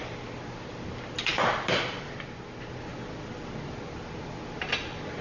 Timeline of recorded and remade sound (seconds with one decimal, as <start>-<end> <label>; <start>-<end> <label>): 0.0-5.2 recorded